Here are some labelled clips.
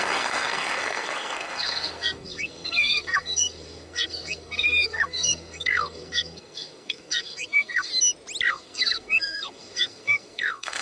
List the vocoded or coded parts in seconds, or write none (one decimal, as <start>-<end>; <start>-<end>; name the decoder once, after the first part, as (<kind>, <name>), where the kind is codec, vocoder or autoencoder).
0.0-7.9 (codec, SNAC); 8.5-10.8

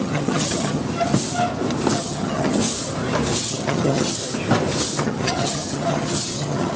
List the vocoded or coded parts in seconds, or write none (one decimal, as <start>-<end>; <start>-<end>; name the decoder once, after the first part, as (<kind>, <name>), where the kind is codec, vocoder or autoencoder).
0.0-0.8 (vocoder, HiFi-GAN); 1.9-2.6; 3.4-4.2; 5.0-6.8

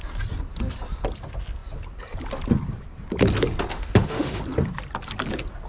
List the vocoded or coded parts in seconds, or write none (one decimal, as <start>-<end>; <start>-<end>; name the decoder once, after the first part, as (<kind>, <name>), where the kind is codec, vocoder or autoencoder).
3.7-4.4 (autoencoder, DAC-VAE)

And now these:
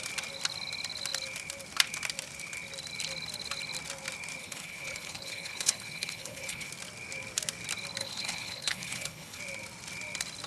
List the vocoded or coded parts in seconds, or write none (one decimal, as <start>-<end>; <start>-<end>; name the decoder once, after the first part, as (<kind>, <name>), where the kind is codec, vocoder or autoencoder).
4.4-6.7 (codec, HILCodec); 8.0-9.4